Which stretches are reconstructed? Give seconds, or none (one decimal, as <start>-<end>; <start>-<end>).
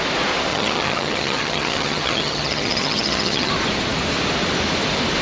0.5-3.5